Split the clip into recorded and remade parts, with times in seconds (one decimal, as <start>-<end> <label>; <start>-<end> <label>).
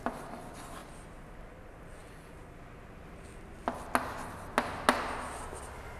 0.0-6.0 recorded